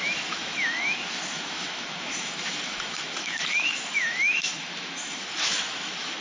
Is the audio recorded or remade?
remade